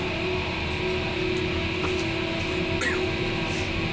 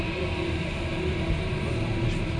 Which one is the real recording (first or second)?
first